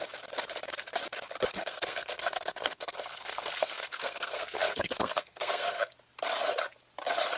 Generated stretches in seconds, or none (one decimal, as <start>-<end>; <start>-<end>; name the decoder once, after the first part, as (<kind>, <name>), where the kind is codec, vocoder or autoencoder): 1.5-5.9 (codec, SNAC)